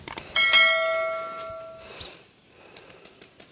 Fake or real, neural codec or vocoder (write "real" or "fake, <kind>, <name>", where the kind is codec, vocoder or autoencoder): real